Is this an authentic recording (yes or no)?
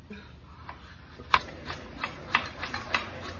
no